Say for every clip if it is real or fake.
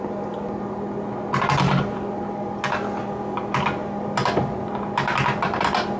real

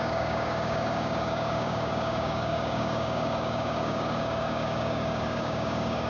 fake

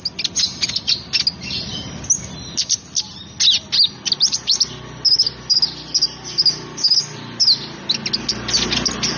real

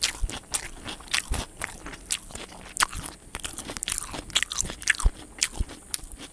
real